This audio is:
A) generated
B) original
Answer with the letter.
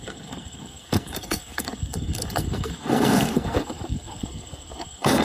A